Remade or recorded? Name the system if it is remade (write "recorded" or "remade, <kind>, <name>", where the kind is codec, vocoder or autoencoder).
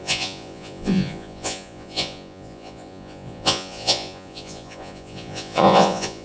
remade, vocoder, Vocos